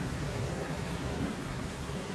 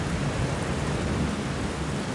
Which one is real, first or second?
second